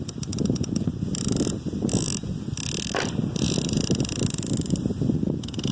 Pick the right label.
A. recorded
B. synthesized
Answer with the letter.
A